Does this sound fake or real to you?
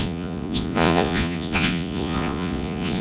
fake